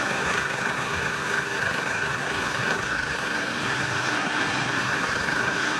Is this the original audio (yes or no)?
no